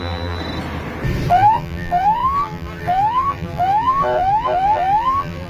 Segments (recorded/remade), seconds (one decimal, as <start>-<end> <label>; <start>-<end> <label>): 0.0-0.4 remade; 0.4-1.3 recorded; 1.3-5.5 remade